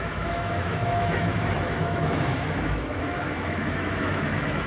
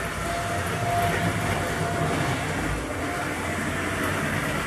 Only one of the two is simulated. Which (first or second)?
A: first